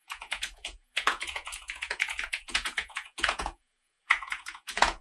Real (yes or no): no